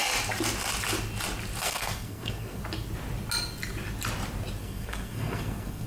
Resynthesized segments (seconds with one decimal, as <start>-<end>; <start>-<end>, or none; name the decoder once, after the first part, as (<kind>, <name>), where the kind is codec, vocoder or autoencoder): 1.6-2.6 (codec, SNAC); 4.6-5.9